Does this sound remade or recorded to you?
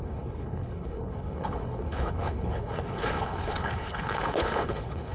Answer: remade